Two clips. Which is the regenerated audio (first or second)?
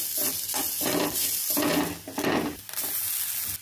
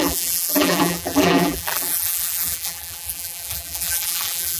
second